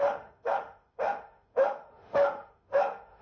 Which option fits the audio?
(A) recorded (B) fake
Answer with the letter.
B